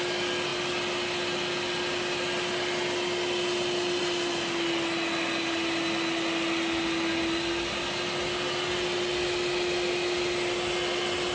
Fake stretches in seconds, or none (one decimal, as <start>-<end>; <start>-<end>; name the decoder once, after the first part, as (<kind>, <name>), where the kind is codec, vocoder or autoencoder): none